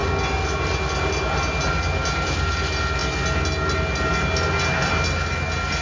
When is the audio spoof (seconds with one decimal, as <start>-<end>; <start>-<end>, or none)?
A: none